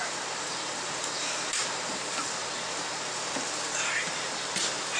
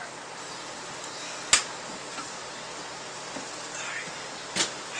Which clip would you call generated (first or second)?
first